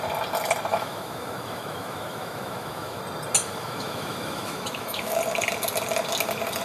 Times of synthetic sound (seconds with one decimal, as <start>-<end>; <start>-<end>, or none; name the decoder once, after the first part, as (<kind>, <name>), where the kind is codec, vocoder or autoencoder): 0.7-3.0 (autoencoder, DAC-VAE); 3.4-5.2